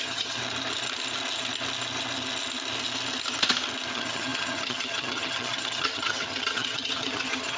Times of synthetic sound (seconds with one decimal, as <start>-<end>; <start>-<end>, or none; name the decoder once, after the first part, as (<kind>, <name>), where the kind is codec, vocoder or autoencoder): 0.0-0.4 (vocoder, HiFi-GAN); 3.9-7.6